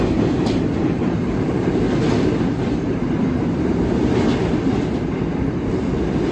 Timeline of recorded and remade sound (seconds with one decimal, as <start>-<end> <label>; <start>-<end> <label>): 0.0-0.8 recorded; 0.8-3.4 remade; 3.4-4.3 recorded; 4.3-5.7 remade; 5.7-6.3 recorded